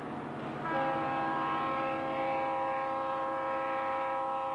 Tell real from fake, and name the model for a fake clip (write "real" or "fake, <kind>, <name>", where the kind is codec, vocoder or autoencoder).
real